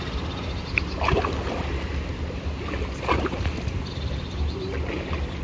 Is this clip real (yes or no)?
yes